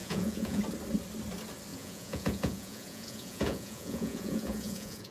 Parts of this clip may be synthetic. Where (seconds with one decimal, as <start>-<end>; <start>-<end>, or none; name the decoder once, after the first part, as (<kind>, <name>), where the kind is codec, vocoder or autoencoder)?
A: 0.0-0.6 (vocoder, Vocos); 1.7-5.1